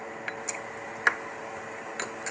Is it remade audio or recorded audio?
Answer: recorded